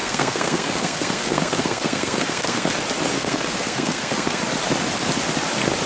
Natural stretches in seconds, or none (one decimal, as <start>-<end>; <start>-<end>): 2.7-3.1; 4.4-5.9